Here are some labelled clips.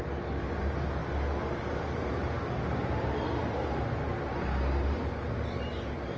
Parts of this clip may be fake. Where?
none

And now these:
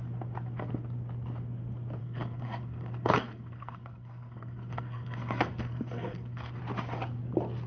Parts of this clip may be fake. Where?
2.0-6.6 (codec, SNAC)

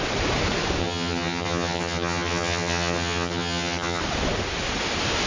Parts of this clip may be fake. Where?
0.8-4.0 (vocoder, HiFi-GAN)